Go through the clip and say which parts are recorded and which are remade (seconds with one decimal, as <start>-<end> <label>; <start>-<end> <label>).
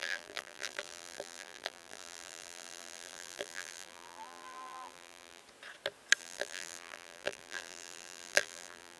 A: 0.0-5.4 remade; 5.4-6.2 recorded; 6.2-9.0 remade